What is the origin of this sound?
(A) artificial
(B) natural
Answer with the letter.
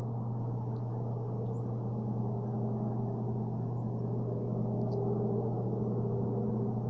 B